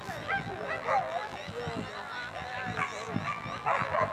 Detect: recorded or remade remade